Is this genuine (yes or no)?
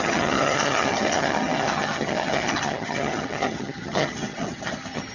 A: no